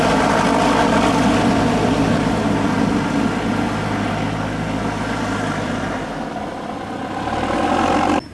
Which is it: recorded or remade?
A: recorded